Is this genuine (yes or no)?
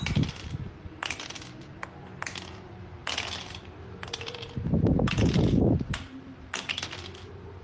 yes